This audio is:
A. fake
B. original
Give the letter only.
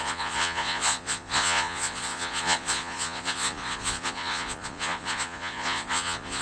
A